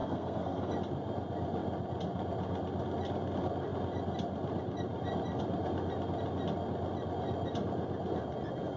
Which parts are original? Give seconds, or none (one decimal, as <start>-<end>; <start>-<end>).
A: 0.7-8.8